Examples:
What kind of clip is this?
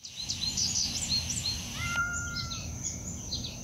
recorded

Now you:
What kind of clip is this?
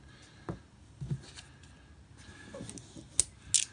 recorded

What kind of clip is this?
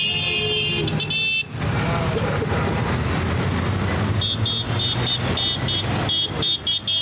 recorded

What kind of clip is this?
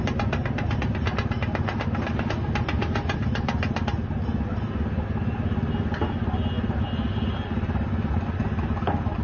recorded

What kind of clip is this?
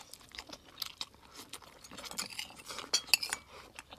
recorded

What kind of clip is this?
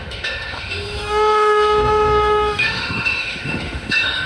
remade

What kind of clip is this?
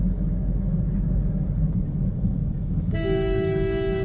remade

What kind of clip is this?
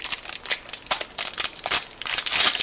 recorded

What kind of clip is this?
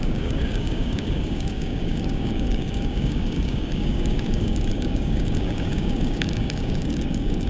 remade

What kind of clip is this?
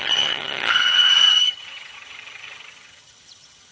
remade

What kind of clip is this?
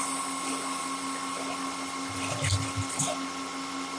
recorded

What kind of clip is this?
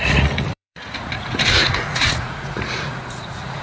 remade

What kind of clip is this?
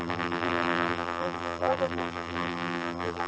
remade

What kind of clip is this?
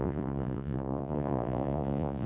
remade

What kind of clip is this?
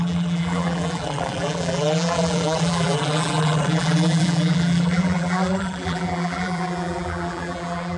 remade